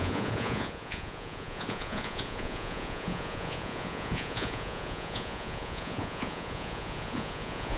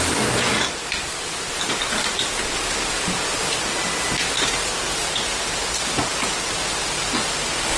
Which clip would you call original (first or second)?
second